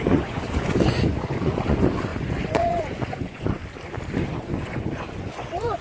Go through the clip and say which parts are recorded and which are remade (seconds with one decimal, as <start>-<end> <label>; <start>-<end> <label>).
0.0-3.6 remade; 3.6-4.3 recorded; 4.3-5.8 remade

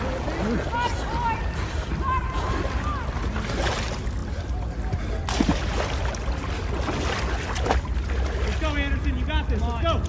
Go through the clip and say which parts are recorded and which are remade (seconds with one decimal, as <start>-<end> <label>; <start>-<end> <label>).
0.0-10.1 recorded